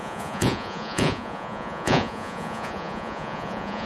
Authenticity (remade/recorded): remade